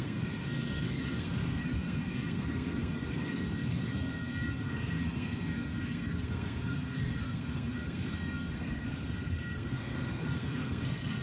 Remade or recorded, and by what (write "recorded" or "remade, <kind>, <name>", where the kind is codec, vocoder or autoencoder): remade, codec, SNAC